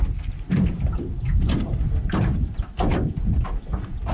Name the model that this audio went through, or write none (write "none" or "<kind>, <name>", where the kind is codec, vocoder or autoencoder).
none